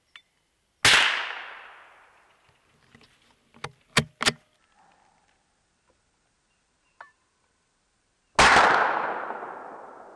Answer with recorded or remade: recorded